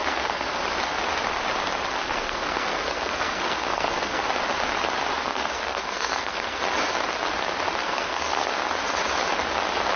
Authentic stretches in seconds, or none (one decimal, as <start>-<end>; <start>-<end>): 0.6-1.9; 4.2-5.2; 6.6-7.8; 8.6-10.0